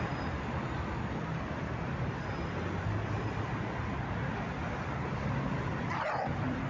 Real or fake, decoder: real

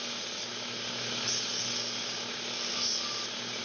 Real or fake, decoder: real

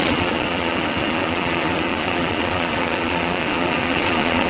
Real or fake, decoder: fake, vocoder, Vocos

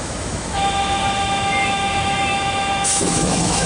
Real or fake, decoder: fake, autoencoder, DAC-VAE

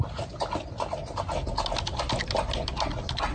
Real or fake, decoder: real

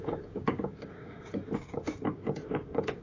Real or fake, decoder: fake, codec, DAC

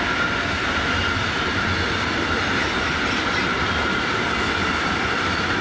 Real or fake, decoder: fake, vocoder, BigVGAN v2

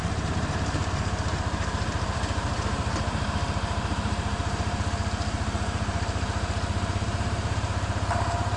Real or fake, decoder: fake, vocoder, BigVGAN v2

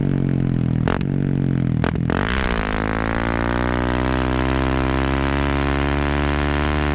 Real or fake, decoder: real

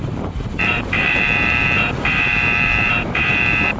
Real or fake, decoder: fake, vocoder, BigVGAN v2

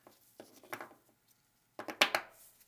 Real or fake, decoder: real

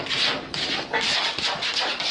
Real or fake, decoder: real